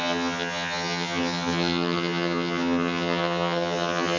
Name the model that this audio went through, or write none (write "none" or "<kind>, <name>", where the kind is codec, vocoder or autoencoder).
vocoder, HiFi-GAN